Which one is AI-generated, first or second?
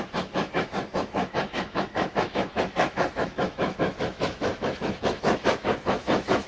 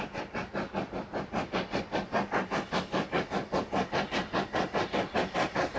first